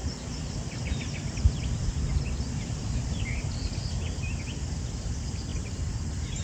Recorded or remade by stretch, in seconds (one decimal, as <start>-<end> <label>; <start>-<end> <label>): 0.0-3.7 remade; 3.7-5.5 recorded; 5.5-6.4 remade